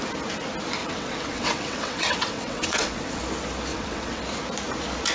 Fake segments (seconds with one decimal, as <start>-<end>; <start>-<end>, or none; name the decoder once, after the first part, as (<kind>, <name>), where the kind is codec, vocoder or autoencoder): 0.8-3.2 (vocoder, WaveNeXt); 3.7-4.2